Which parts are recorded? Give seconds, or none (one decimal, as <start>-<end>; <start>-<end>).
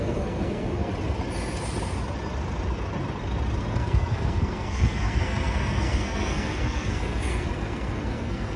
0.9-3.6